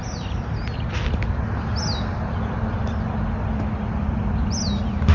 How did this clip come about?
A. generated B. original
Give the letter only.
B